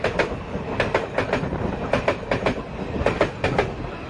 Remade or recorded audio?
recorded